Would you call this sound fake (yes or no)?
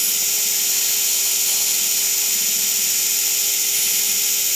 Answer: no